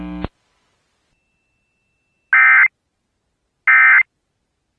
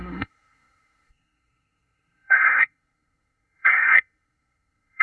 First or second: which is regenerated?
second